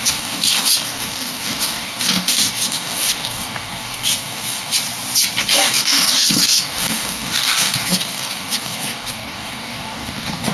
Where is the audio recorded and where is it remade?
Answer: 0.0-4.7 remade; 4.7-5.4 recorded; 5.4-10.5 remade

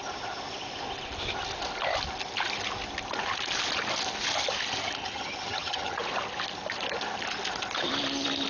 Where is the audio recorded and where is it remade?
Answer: 0.0-5.0 recorded; 5.0-6.0 remade; 6.0-8.5 recorded

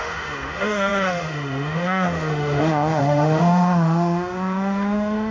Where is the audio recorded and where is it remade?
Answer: 0.0-5.3 remade

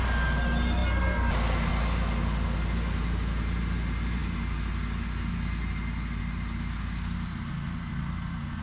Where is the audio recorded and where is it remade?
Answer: 0.0-8.6 recorded

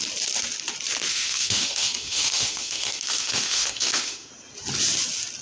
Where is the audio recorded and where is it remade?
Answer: 0.0-1.1 recorded; 1.1-4.3 remade; 4.3-5.4 recorded

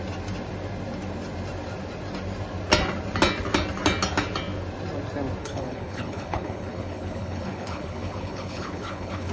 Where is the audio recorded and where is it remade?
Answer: 0.0-5.4 recorded; 5.4-9.3 remade

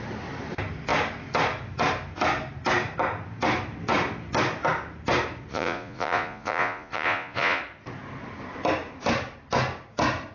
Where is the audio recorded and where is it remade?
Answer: 0.0-5.5 recorded; 5.5-7.6 remade; 7.6-10.3 recorded

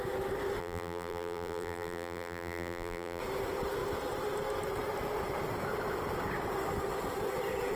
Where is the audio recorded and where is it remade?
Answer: 0.0-0.6 recorded; 0.6-3.2 remade; 3.2-7.8 recorded